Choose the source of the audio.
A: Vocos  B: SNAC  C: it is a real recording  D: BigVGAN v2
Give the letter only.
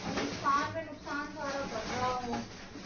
C